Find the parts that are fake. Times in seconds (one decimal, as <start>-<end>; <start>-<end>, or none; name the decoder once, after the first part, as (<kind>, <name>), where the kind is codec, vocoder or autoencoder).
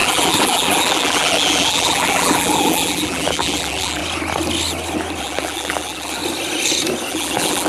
0.0-4.0 (vocoder, BigVGAN v2); 5.2-6.2; 7.1-7.7